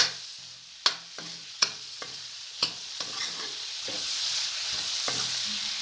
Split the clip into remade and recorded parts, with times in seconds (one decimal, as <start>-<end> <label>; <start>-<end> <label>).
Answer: 0.0-1.4 recorded; 1.4-4.9 remade; 4.9-5.8 recorded